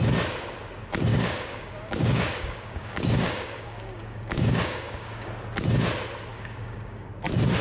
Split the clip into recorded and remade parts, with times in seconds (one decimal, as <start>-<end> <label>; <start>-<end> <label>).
0.0-1.1 recorded; 1.1-5.3 remade; 5.3-6.3 recorded; 6.3-7.1 remade; 7.1-7.6 recorded